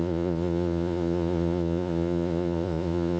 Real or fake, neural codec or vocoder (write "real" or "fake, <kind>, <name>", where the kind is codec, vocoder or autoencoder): fake, vocoder, Vocos